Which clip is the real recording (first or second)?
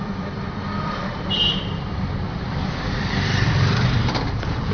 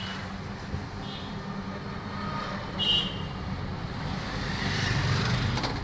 second